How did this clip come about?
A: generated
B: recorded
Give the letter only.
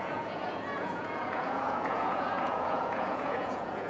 A